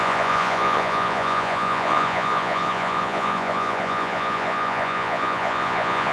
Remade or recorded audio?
remade